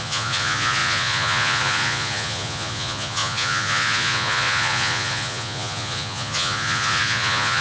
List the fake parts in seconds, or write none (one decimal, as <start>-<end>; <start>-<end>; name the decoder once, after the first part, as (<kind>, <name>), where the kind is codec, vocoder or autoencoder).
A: 0.0-7.6 (vocoder, Vocos)